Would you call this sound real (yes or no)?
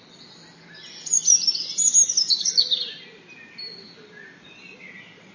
yes